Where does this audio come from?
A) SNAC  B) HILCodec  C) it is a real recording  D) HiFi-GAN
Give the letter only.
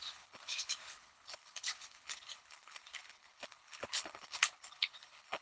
B